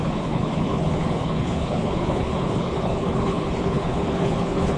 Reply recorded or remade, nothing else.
remade